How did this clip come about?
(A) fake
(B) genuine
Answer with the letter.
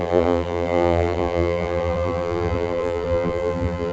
A